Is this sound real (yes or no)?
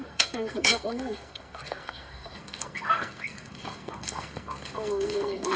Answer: no